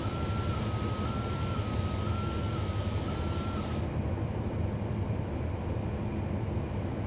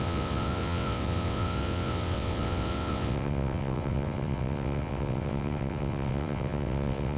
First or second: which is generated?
second